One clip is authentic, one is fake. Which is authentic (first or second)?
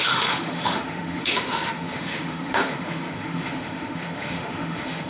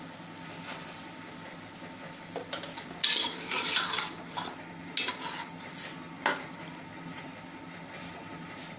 second